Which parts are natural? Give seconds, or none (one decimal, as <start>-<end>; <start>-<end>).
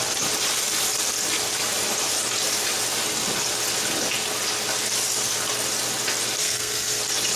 0.0-6.4; 7.0-7.4